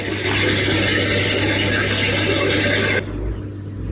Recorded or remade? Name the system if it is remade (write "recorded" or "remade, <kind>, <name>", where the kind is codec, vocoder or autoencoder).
recorded